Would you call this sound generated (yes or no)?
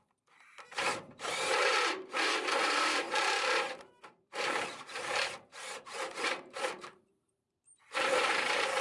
yes